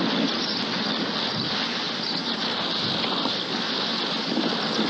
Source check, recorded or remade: recorded